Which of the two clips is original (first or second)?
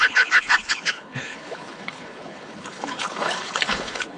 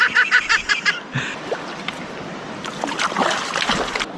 second